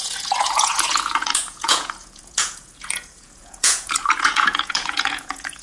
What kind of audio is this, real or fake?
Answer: fake